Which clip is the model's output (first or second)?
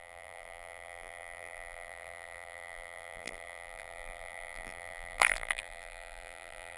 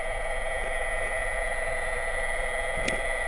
first